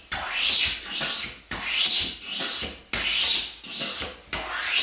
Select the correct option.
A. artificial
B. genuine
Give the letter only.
B